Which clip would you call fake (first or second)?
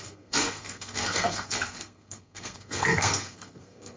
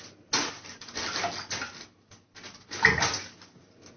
first